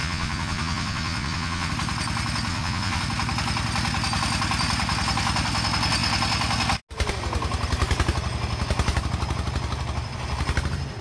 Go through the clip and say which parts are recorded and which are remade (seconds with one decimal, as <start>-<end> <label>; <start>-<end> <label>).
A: 0.0-1.7 remade; 1.7-2.5 recorded; 2.5-3.0 remade; 3.0-11.0 recorded